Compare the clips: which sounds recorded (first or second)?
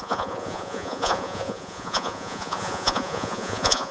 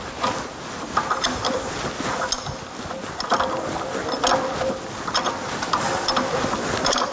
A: second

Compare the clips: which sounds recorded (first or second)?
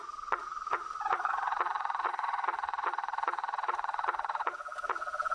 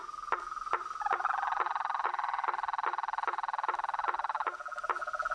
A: second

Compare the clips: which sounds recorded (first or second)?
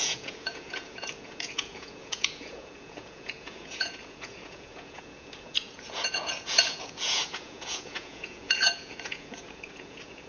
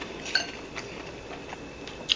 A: second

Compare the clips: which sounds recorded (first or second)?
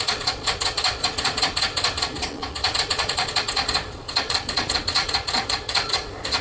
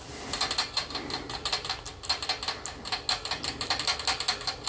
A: second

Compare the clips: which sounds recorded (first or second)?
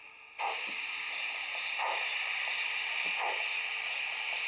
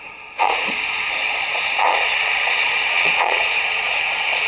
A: first